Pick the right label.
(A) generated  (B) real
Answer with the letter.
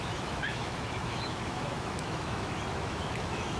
A